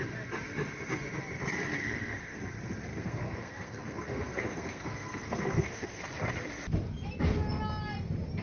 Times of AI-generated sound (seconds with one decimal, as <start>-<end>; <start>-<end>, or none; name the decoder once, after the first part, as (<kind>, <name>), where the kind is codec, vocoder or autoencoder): 1.7-2.4 (codec, SNAC); 2.9-6.0